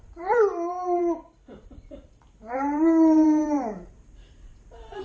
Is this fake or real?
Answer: fake